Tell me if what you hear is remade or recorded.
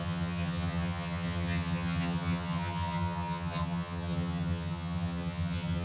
remade